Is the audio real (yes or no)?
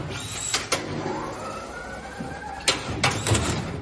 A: yes